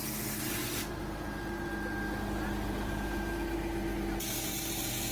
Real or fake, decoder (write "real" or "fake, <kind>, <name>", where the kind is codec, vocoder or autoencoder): real